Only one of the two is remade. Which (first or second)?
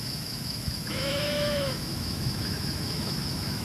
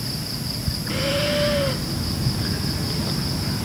first